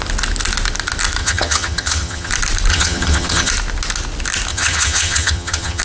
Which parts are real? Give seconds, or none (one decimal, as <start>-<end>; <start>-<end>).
0.0-1.2; 2.3-2.7; 3.5-4.5